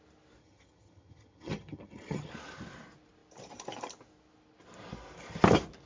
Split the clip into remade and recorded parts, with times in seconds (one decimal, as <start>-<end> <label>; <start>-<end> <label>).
0.0-0.4 recorded; 0.4-2.3 remade; 2.3-5.9 recorded